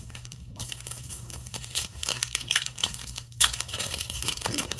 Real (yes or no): no